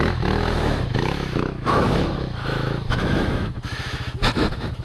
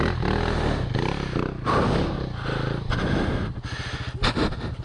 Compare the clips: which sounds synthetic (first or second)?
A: first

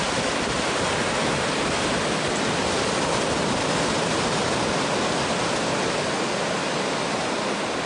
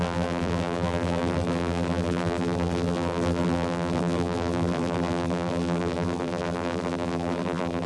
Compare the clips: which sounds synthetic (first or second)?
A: second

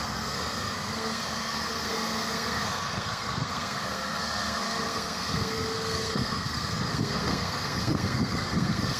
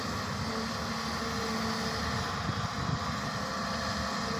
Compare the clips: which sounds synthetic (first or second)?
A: first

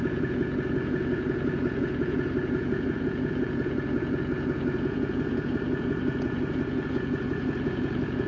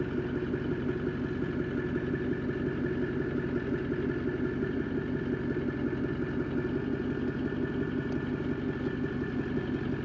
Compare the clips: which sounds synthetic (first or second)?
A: first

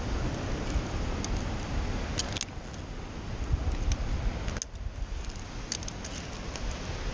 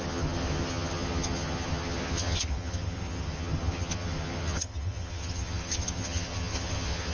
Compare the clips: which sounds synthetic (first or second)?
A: second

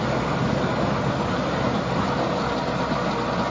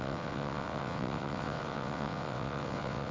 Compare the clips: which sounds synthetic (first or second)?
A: second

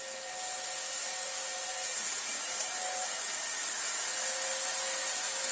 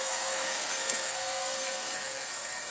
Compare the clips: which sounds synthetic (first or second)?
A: second